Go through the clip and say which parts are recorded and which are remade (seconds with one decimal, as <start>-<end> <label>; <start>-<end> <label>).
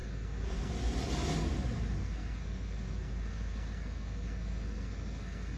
0.0-0.7 remade; 0.7-2.0 recorded; 2.0-5.6 remade